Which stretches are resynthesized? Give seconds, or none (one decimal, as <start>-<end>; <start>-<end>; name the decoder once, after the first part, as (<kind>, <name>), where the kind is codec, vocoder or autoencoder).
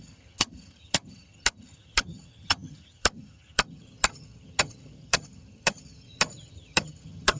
0.0-7.4 (vocoder, HiFi-GAN)